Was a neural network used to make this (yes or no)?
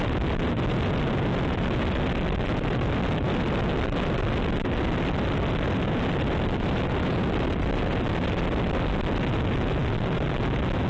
no